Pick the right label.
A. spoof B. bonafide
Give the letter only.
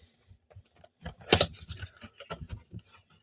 A